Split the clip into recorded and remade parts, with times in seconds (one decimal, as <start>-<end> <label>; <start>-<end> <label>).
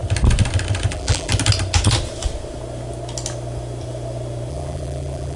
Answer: 0.0-0.9 recorded; 0.9-1.3 remade; 1.3-4.5 recorded; 4.5-5.4 remade